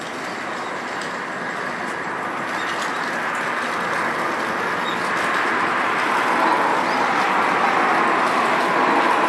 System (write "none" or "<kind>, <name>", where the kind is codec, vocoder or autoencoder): none